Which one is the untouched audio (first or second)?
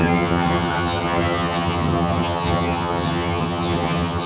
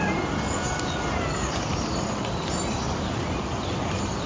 second